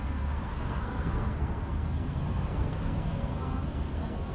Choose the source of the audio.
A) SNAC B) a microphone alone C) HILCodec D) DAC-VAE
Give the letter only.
A